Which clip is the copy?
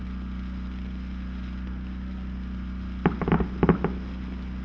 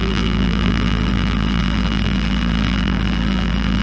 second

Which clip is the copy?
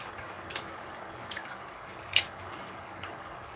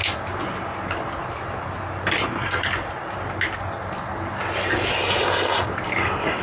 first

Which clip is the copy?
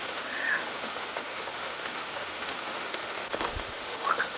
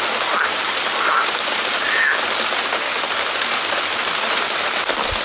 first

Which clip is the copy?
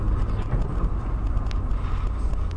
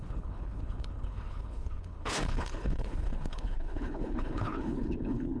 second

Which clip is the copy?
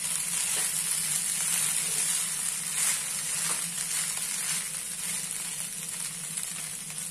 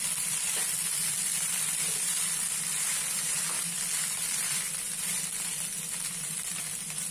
second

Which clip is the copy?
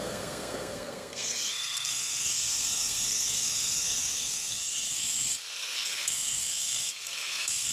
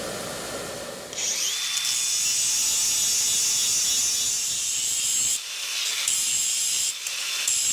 first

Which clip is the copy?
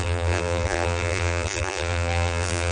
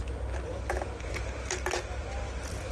first